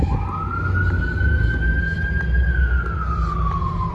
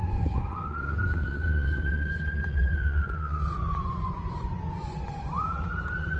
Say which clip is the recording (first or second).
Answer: first